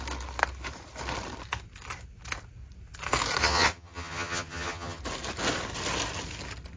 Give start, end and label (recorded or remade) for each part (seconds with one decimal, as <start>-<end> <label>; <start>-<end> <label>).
0.0-3.4 recorded; 3.4-5.0 remade; 5.0-6.8 recorded